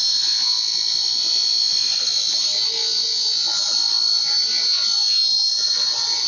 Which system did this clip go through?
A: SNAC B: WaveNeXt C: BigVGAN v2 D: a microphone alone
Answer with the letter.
D